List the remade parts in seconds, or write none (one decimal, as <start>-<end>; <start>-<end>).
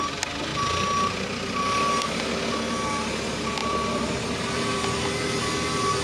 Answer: 3.6-4.7